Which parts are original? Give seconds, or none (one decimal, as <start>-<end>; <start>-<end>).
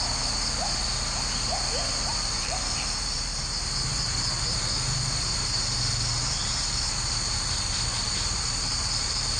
0.0-2.1; 3.4-6.4